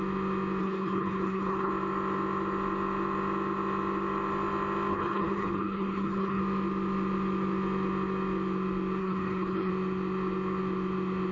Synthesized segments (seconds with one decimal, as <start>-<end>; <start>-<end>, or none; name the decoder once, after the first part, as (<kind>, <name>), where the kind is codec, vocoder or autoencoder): 0.6-1.7 (codec, HILCodec); 4.9-6.4; 9.0-9.7